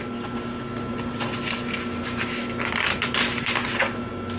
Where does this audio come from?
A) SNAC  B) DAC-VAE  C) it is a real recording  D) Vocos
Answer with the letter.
C